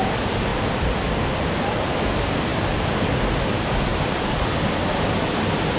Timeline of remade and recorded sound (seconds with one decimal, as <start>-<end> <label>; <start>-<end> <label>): 0.0-2.5 recorded; 2.5-3.3 remade; 3.3-3.9 recorded; 3.9-4.8 remade; 4.8-5.8 recorded